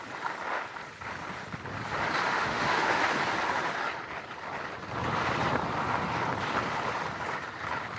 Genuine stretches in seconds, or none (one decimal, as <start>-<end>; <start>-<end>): 0.0-2.3; 2.9-8.0